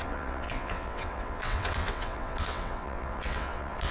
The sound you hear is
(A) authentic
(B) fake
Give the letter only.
B